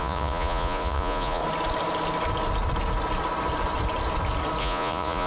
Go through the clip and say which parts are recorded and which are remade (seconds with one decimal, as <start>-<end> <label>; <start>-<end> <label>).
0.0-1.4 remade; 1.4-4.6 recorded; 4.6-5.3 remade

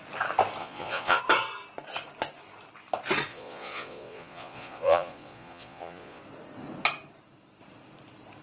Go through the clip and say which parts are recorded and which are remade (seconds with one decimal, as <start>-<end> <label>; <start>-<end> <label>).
0.0-0.6 recorded; 0.6-1.2 remade; 1.2-3.3 recorded; 3.3-6.2 remade; 6.2-8.4 recorded

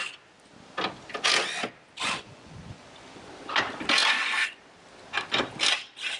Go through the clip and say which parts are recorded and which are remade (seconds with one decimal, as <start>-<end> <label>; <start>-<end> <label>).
0.0-2.0 recorded; 2.0-3.3 remade; 3.3-4.0 recorded; 4.0-4.6 remade; 4.6-6.2 recorded

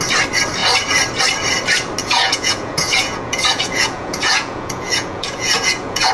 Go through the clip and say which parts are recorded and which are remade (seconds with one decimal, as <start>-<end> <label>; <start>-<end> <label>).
0.0-2.0 recorded; 2.0-6.1 remade

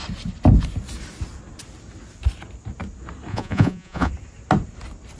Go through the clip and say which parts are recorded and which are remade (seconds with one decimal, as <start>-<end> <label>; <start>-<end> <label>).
0.0-3.3 recorded; 3.3-4.1 remade; 4.1-5.2 recorded

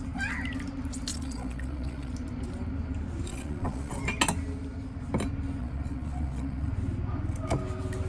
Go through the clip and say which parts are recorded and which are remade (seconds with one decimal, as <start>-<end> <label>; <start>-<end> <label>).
0.0-1.1 recorded; 1.1-2.1 remade; 2.1-3.3 recorded; 3.3-4.0 remade; 4.0-5.6 recorded; 5.6-6.7 remade; 6.7-8.1 recorded

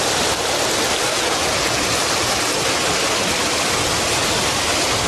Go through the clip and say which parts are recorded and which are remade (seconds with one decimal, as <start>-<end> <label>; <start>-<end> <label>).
0.0-1.1 recorded; 1.1-1.8 remade; 1.8-5.1 recorded